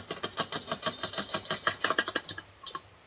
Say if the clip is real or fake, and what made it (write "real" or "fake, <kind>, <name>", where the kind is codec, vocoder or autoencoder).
real